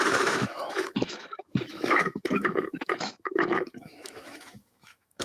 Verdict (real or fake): fake